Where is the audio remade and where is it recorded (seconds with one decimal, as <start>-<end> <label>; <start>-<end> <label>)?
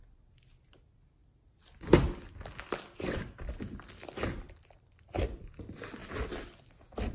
0.0-7.1 recorded